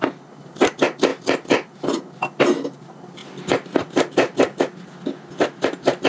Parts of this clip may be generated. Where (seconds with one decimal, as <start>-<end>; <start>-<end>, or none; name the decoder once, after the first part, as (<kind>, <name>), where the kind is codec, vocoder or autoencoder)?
none